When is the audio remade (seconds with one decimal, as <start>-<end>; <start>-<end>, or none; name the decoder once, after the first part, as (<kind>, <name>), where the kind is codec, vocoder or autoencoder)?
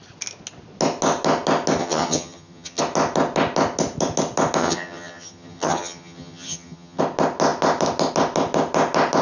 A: 1.8-2.8 (vocoder, HiFi-GAN); 4.6-7.0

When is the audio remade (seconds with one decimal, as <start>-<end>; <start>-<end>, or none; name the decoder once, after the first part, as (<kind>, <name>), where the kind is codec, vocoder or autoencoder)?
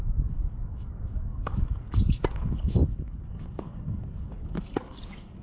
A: 0.0-5.4 (codec, DAC)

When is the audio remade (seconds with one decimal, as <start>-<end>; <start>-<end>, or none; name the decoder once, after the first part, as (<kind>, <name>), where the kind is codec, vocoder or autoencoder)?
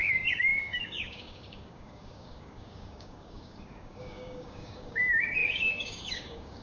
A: 0.0-6.6 (codec, DAC)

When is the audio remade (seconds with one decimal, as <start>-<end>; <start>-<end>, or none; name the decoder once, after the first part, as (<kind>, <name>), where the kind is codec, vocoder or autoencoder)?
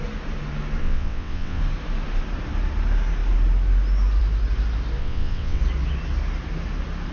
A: 0.8-1.6 (vocoder, WaveNeXt); 5.0-5.6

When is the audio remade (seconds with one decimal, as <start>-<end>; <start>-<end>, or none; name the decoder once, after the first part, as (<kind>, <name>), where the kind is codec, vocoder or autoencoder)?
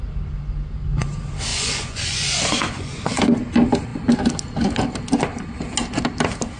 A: 1.5-3.2 (vocoder, Vocos)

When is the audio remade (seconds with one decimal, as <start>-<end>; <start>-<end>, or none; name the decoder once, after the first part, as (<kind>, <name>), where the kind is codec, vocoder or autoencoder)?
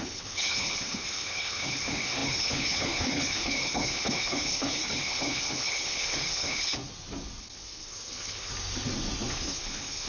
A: 0.0-6.8 (codec, HILCodec); 7.4-8.5; 9.3-10.1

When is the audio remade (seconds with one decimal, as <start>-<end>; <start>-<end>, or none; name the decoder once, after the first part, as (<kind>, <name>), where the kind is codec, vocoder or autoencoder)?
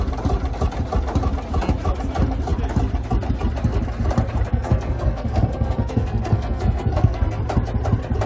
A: 4.5-7.4 (codec, SNAC)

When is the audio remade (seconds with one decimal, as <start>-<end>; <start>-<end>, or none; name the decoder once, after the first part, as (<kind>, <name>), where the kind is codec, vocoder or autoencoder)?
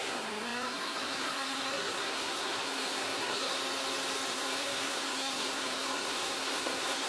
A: 0.0-3.6 (codec, SNAC); 4.3-7.1